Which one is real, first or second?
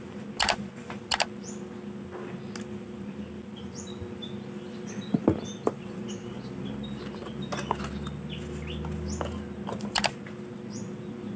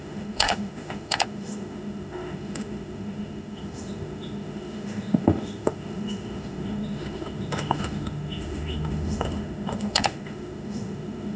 first